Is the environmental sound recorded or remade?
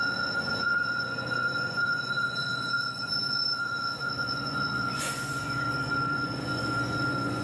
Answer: remade